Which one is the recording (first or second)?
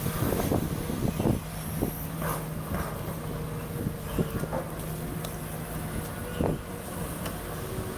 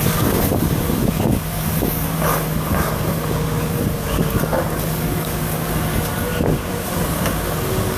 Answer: first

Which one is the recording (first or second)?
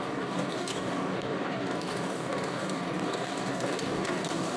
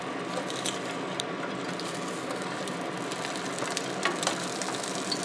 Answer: second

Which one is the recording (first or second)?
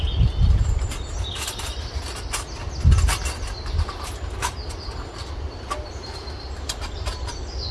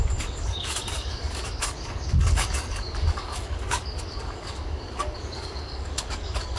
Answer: first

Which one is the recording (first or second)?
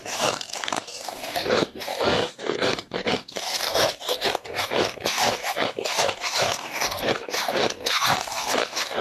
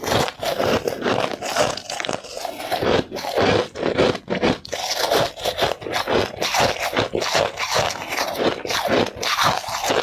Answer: second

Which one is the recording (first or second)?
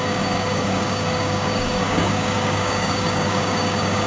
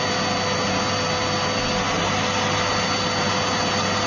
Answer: second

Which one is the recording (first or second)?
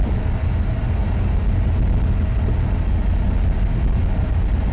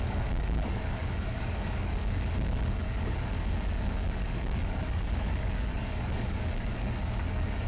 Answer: first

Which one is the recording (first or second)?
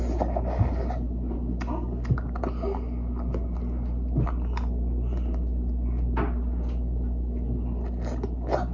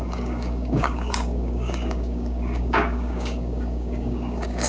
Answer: first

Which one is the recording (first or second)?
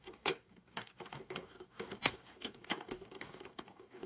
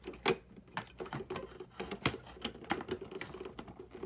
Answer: second